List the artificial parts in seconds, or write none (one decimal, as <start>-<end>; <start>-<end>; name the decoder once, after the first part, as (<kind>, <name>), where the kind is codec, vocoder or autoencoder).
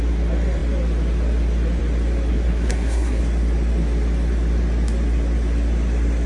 2.3-3.2 (codec, SNAC)